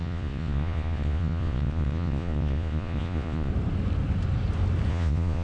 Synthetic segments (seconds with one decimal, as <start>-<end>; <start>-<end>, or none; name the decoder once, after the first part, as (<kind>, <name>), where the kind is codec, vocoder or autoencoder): 0.0-3.5 (vocoder, Vocos); 4.9-5.4